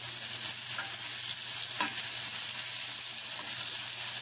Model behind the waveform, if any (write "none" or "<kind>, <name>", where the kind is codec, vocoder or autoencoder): none